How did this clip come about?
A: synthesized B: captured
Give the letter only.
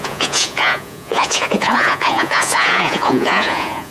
A